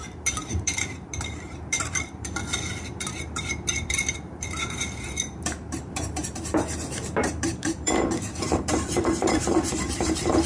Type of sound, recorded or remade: remade